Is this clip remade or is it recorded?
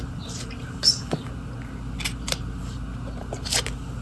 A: recorded